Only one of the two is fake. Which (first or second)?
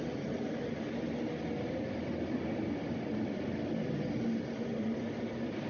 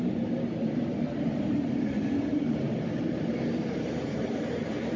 second